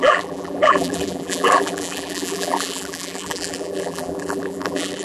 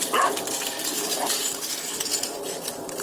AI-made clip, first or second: first